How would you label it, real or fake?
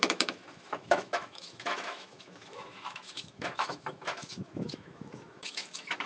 fake